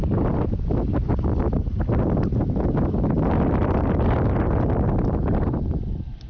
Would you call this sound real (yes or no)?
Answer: yes